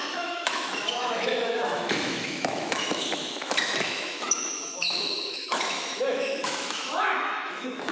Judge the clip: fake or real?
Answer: fake